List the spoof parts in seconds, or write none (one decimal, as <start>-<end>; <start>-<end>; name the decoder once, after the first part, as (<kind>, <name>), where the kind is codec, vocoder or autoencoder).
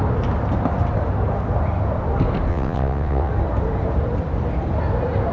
2.5-3.3 (vocoder, WaveNeXt)